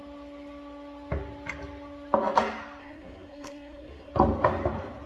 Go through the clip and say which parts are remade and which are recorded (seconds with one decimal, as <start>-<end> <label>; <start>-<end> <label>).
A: 0.0-2.8 recorded; 2.8-4.1 remade; 4.1-5.1 recorded